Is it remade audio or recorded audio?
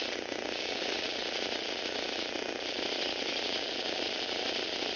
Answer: recorded